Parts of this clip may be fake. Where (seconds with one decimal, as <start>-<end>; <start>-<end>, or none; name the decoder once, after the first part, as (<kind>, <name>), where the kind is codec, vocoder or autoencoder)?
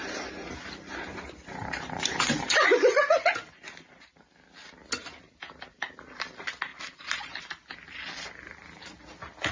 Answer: 1.1-3.0 (vocoder, BigVGAN v2)